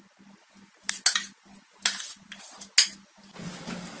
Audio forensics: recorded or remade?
recorded